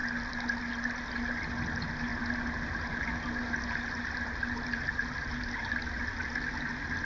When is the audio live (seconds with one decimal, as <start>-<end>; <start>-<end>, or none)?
0.0-7.0